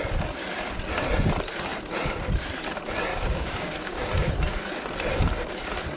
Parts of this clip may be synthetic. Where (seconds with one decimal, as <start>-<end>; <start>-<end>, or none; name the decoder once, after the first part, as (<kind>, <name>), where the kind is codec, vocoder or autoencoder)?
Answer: 3.1-4.3 (codec, DAC)